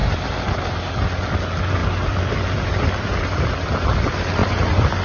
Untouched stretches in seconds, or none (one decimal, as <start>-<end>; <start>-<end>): 0.0-1.8; 3.2-5.0